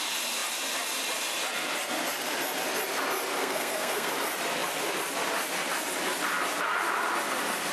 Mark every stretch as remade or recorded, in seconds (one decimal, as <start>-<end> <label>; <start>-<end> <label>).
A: 0.0-3.4 recorded; 3.4-4.1 remade; 4.1-7.7 recorded